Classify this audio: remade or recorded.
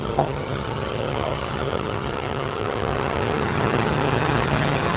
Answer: remade